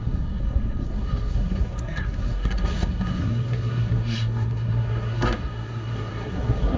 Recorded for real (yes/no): no